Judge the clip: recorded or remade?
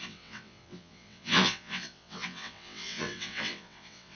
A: remade